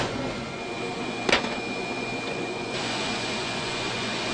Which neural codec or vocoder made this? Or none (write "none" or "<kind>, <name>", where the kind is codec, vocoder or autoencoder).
vocoder, Vocos